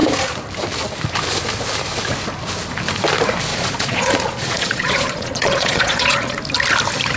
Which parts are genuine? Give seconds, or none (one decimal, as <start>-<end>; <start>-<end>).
0.0-3.5; 6.4-7.2